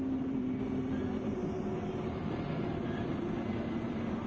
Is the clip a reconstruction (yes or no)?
yes